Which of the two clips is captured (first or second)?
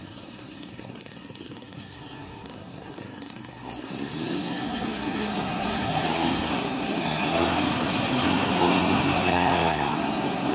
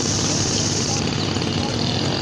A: second